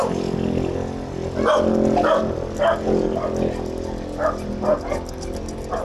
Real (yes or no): yes